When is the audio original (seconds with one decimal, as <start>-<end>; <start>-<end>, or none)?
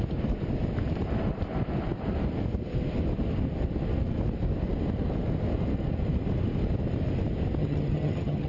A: 0.0-7.6